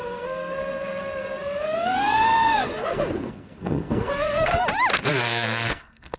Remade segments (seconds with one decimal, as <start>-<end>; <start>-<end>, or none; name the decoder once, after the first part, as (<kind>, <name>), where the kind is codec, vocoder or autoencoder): 0.0-4.6 (codec, SNAC); 5.1-6.2